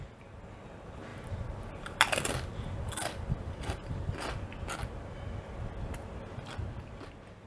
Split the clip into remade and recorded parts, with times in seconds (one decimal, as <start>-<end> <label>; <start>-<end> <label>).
0.0-1.1 recorded; 1.1-4.1 remade; 4.1-7.5 recorded